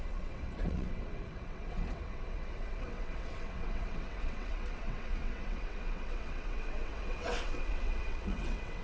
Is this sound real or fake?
fake